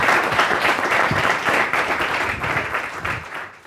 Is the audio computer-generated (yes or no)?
yes